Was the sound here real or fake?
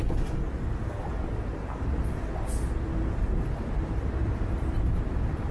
real